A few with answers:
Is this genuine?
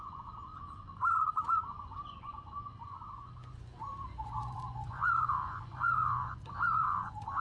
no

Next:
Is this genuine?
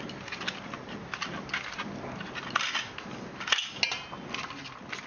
yes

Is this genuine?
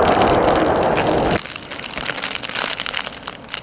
yes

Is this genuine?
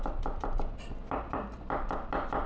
yes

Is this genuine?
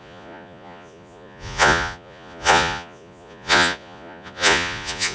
no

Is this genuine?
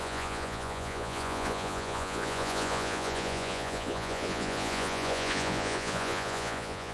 no